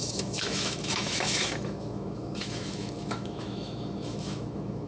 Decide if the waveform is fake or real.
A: fake